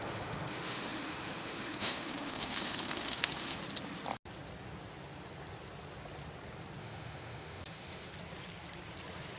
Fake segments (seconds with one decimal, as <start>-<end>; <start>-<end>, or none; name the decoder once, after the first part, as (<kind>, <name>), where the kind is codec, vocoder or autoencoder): 0.0-3.6 (autoencoder, DAC-VAE); 6.8-8.1